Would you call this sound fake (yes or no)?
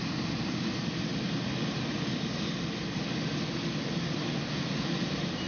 no